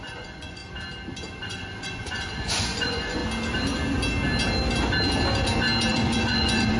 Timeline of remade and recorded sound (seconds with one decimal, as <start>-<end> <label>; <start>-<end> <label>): 0.0-0.6 remade; 0.6-1.4 recorded; 1.4-3.2 remade; 3.2-5.9 recorded; 5.9-6.8 remade